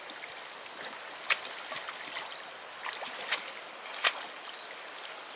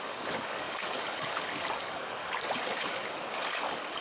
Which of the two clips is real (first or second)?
first